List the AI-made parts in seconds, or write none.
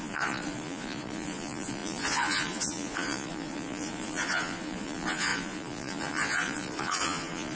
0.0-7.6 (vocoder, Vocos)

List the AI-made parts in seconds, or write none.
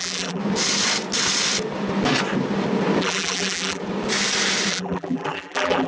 0.0-0.4 (vocoder, BigVGAN v2); 3.0-3.8; 4.7-5.9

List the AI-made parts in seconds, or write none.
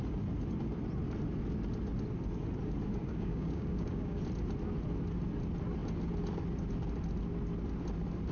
3.0-4.2 (codec, DAC)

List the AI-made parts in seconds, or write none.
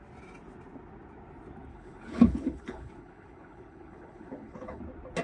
1.7-4.8 (codec, HILCodec)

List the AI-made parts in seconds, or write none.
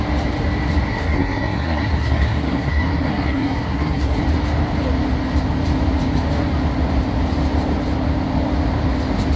0.9-4.2 (codec, SNAC)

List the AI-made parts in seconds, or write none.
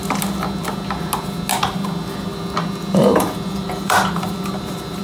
2.8-5.0 (vocoder, BigVGAN v2)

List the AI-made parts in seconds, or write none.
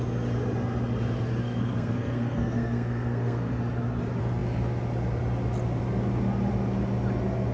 1.4-3.6 (codec, SNAC)